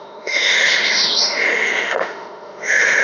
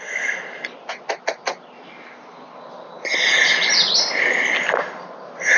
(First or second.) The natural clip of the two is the second